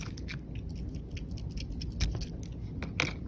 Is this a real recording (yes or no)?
yes